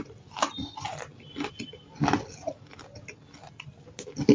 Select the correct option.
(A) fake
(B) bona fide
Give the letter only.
B